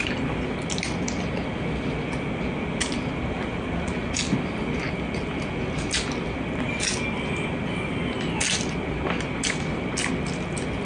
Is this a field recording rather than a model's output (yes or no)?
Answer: yes